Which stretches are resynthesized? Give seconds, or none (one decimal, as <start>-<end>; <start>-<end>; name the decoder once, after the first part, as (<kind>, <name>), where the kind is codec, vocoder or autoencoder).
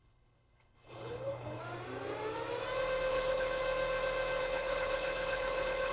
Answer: 0.0-1.6 (codec, HILCodec); 3.1-3.6; 4.4-5.9